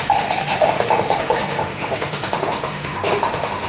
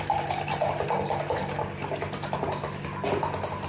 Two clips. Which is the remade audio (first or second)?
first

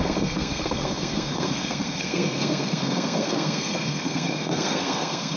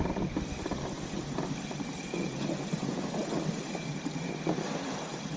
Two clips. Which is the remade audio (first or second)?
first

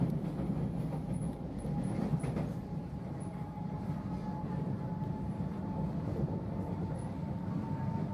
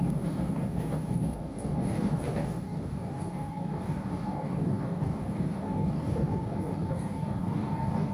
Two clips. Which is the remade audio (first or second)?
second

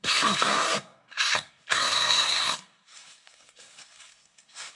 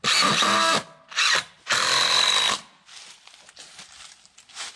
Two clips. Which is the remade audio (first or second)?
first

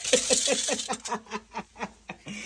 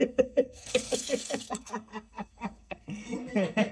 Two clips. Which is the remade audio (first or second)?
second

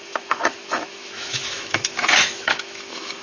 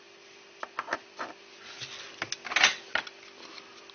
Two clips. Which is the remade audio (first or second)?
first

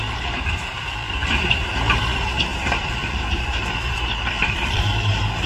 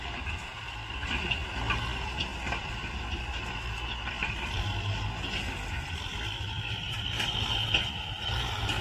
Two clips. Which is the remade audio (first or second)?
first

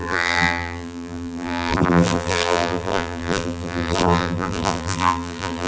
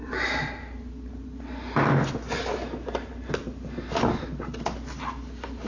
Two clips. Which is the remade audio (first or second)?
first